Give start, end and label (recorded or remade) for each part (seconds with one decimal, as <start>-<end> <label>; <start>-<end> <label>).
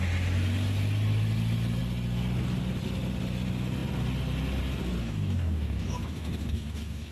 0.0-5.0 recorded; 5.0-7.1 remade